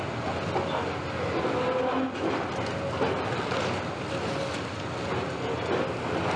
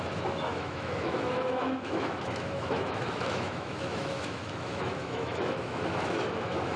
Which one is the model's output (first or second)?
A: second